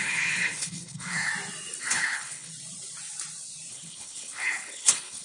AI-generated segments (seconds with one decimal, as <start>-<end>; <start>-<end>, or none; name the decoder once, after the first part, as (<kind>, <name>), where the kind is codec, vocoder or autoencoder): 0.0-1.3 (codec, HILCodec); 1.8-2.5; 3.7-5.2